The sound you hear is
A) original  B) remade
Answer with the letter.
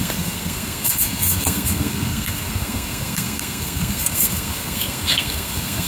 B